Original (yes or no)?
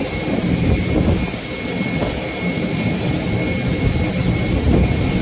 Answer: yes